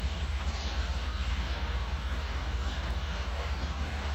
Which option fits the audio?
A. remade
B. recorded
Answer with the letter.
A